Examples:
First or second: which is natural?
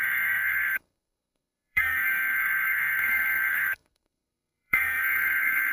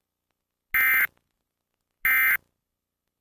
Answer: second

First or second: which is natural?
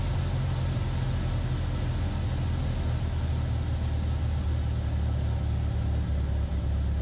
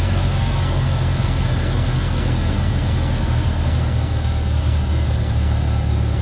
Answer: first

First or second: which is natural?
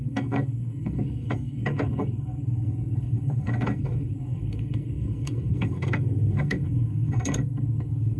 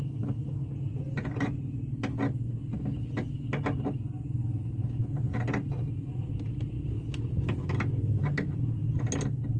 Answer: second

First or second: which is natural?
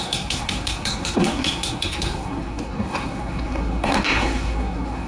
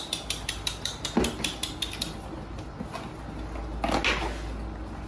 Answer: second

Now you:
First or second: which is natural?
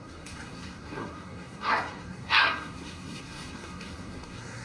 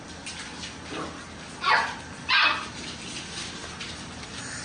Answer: second